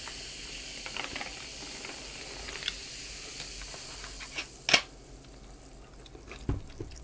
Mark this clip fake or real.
real